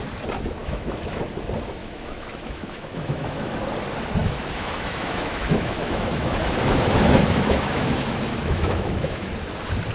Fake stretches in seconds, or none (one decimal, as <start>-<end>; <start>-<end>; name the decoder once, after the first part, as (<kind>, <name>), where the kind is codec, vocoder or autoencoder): 0.6-1.2 (autoencoder, DAC-VAE); 1.8-3.5; 4.2-9.3